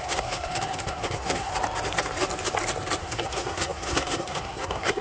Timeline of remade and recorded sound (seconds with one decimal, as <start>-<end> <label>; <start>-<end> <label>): 0.0-1.5 remade; 1.5-3.0 recorded; 3.0-5.0 remade